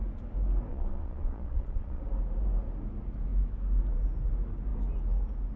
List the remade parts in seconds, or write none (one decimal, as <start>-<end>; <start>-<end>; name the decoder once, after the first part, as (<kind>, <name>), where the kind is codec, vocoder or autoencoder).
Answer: 0.7-2.0 (vocoder, Vocos)